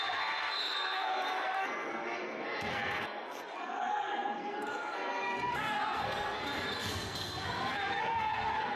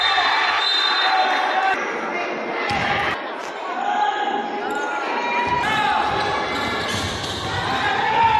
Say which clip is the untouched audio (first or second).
second